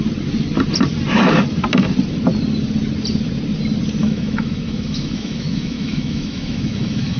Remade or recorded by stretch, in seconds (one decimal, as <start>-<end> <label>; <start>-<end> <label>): 0.0-4.0 recorded; 4.0-7.2 remade